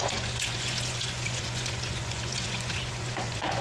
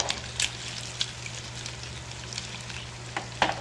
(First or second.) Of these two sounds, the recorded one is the second